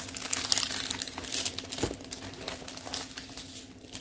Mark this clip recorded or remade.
recorded